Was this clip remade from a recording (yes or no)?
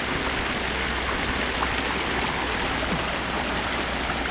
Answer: no